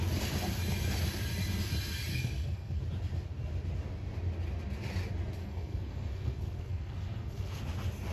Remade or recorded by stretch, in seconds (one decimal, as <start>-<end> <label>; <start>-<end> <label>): 0.0-2.1 recorded; 2.1-2.8 remade; 2.8-5.4 recorded; 5.4-7.6 remade; 7.6-8.1 recorded